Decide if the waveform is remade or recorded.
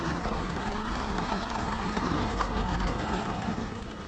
remade